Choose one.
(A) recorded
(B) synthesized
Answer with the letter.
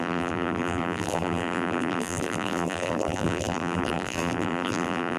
B